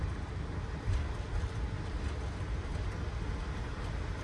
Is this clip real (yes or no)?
yes